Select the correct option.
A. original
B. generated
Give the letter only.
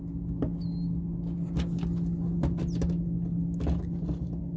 A